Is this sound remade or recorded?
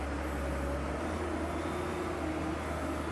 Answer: recorded